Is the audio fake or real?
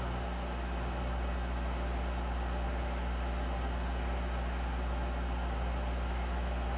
real